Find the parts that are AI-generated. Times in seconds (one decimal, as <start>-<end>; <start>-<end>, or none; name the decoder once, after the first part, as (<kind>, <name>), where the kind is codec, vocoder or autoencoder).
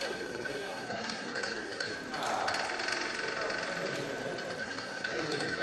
0.0-1.9 (codec, SNAC); 4.6-5.6